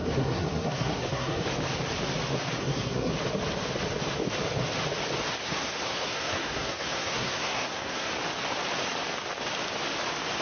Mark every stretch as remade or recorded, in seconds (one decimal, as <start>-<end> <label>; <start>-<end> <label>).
0.0-1.4 remade; 1.4-2.6 recorded; 2.6-3.1 remade; 3.1-5.4 recorded; 5.4-8.1 remade; 8.1-10.4 recorded